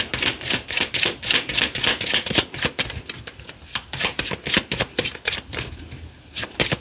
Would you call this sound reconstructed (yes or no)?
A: no